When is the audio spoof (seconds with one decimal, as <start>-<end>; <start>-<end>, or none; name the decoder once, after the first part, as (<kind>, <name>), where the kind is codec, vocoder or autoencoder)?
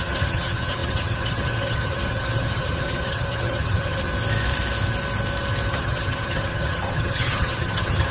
0.0-4.1 (vocoder, HiFi-GAN); 5.7-8.1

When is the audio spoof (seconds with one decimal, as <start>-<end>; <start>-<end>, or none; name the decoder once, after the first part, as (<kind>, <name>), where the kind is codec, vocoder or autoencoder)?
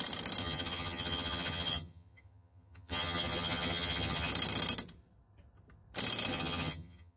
0.4-4.3 (vocoder, HiFi-GAN); 6.3-7.2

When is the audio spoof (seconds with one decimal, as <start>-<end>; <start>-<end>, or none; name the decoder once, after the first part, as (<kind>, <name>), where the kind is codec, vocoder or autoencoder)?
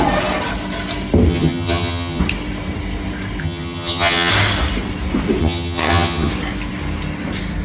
1.3-2.2 (vocoder, HiFi-GAN); 3.4-4.3; 5.4-6.3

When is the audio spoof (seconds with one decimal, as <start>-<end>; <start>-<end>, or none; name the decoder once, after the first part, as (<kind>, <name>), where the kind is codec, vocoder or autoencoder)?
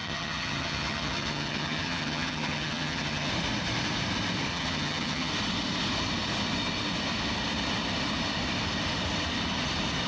0.0-3.3 (vocoder, HiFi-GAN); 4.5-5.3